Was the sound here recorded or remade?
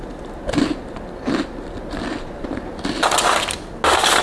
recorded